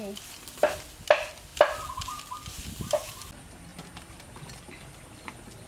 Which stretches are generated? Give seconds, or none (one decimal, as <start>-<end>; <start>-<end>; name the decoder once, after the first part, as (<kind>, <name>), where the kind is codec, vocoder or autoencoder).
3.7-4.5 (vocoder, BigVGAN v2)

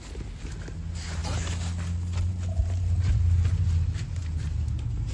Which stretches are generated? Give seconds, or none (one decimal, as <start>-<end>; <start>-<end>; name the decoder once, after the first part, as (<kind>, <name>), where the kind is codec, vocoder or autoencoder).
none

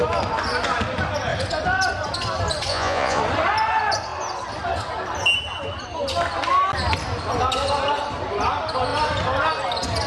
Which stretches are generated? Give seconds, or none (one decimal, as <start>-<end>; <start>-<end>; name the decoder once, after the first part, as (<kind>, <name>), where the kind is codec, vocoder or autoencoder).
2.7-3.2 (vocoder, Vocos)

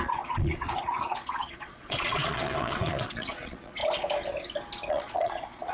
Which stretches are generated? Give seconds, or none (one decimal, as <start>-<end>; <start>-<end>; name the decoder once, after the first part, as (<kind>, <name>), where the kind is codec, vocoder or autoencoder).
0.0-3.8 (vocoder, Vocos); 4.9-5.7

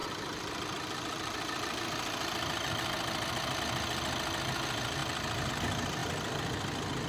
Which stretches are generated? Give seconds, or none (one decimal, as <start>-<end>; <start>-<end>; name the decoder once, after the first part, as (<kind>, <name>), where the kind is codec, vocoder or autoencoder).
0.0-3.6 (vocoder, BigVGAN v2); 5.0-5.5

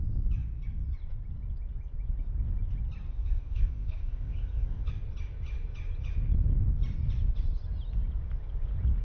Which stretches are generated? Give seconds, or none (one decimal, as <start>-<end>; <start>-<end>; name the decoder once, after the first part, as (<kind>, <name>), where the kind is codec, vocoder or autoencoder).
3.1-4.9 (codec, ZipCodec)

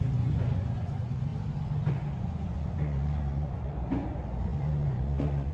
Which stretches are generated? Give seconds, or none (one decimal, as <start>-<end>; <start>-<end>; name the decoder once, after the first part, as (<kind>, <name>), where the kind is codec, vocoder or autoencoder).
0.0-1.3 (vocoder, Vocos); 1.9-5.5